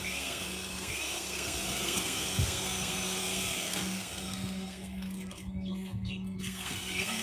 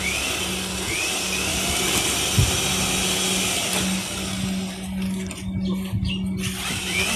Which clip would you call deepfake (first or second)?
first